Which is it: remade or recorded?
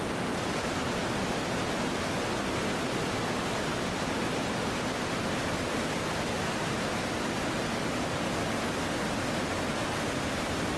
recorded